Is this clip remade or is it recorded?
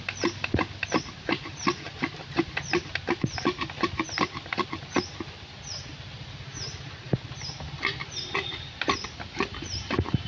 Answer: recorded